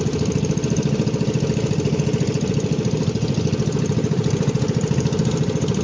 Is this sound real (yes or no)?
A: no